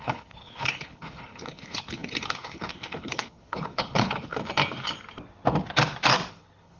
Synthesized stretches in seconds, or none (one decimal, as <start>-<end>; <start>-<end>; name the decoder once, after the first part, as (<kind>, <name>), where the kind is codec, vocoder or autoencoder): 0.0-4.4 (codec, HILCodec); 6.3-6.8